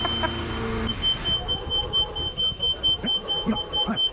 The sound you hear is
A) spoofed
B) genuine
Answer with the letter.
B